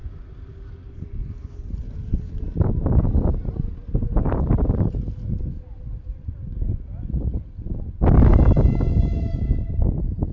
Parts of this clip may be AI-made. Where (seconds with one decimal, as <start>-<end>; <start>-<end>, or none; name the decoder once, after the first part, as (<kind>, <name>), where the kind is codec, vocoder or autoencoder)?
0.0-1.4 (vocoder, BigVGAN v2); 3.3-4.8; 8.3-8.9